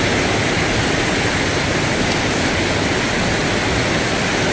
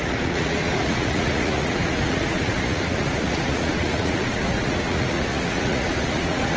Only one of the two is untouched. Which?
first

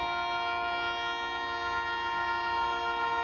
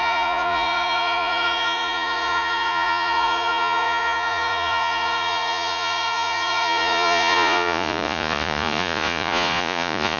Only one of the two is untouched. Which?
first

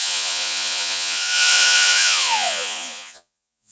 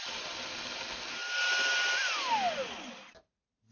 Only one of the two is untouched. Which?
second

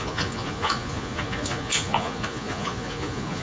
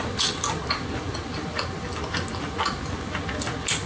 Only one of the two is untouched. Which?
second